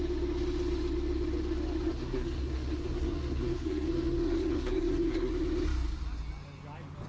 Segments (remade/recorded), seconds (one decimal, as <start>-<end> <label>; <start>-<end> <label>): 0.0-1.9 recorded; 1.9-5.3 remade; 5.3-7.1 recorded